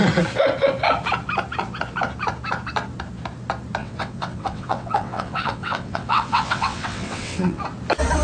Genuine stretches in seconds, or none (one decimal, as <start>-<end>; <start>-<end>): 0.0-3.8; 7.6-8.2